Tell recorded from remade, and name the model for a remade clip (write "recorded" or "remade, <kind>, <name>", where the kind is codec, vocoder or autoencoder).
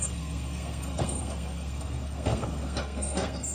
remade, codec, SNAC